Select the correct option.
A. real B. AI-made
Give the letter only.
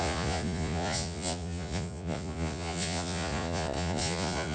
B